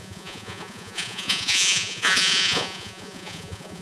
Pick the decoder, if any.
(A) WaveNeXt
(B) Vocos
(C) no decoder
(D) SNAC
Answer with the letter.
B